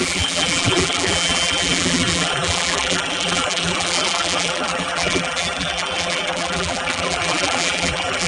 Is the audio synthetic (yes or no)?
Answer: yes